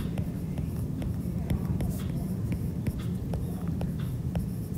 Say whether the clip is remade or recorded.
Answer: remade